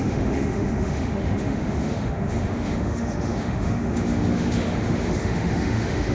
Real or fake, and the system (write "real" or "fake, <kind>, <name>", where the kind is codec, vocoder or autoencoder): fake, autoencoder, DAC-VAE